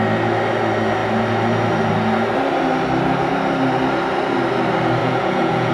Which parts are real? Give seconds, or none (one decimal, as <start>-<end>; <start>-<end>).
0.0-5.0